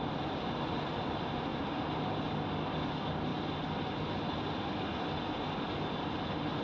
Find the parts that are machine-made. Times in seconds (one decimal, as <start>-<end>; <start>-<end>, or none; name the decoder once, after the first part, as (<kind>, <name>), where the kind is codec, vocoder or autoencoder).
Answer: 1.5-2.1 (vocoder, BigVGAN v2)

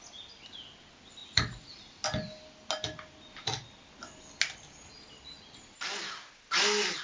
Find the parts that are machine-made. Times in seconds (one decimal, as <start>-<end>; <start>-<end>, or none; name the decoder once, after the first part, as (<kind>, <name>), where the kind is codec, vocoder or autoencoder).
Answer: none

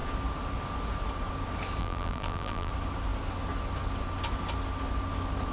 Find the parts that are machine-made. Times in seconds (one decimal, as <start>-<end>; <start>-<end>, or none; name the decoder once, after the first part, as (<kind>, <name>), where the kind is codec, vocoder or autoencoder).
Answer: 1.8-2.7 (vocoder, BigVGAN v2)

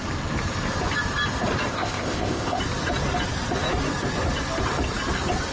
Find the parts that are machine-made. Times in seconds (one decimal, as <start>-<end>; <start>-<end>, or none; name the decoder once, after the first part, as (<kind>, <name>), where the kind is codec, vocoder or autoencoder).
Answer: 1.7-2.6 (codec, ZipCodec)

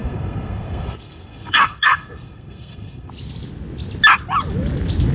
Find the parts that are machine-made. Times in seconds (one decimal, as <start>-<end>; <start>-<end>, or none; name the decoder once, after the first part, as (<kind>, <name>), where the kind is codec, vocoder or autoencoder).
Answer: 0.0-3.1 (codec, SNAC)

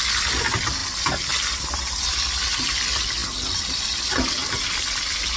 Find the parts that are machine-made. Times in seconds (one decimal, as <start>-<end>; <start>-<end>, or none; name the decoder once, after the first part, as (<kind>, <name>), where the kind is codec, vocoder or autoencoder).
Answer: none